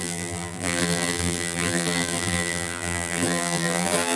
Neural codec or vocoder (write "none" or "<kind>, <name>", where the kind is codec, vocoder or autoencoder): vocoder, BigVGAN v2